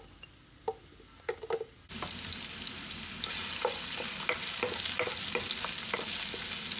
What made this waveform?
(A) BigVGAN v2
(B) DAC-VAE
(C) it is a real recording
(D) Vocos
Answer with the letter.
C